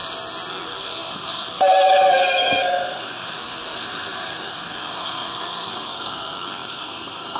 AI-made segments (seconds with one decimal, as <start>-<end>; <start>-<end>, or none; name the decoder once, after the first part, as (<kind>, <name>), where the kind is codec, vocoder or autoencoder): 0.5-7.4 (codec, SNAC)